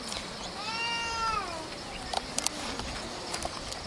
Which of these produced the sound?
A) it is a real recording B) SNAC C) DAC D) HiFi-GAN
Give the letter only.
A